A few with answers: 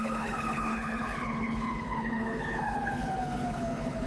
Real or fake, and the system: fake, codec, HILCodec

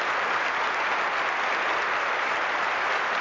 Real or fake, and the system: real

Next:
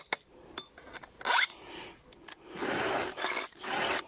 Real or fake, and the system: real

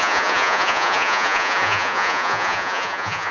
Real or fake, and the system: fake, vocoder, Vocos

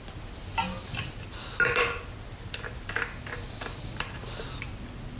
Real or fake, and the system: real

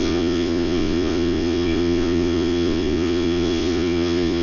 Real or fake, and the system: fake, vocoder, Vocos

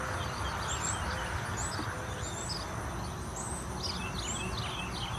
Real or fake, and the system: real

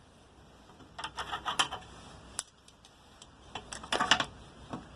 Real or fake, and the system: real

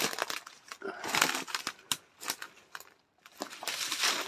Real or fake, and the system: real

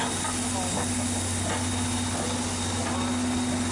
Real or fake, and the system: real